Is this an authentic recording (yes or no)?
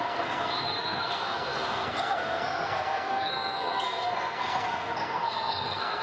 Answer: no